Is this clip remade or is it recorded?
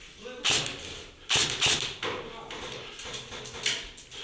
recorded